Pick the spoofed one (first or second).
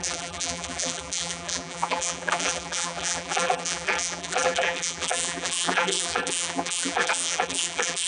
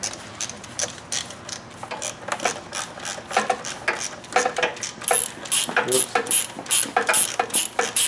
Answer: first